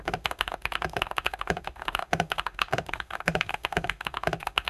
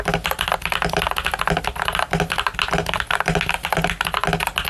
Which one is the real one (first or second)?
second